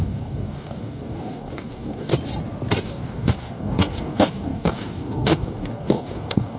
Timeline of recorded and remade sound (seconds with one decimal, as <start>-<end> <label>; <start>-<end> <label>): 0.0-2.1 remade; 2.1-2.8 recorded; 2.8-6.6 remade